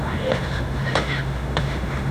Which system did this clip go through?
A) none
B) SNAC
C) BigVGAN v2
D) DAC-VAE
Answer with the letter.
D